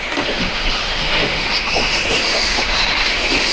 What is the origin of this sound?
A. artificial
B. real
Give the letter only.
A